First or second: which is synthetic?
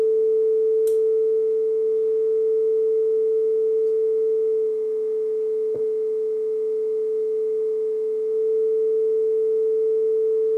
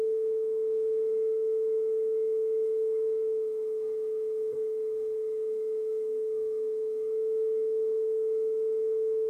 second